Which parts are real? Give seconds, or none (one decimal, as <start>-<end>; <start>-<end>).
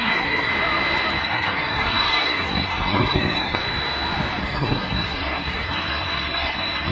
0.5-1.2; 3.6-4.4